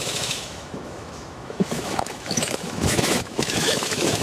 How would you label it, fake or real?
fake